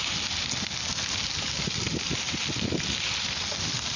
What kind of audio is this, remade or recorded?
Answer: recorded